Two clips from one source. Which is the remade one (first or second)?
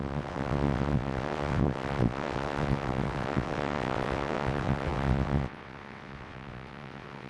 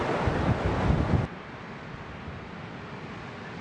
first